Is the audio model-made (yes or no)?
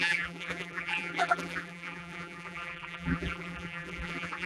yes